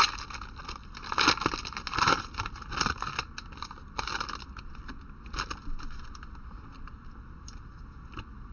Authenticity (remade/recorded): recorded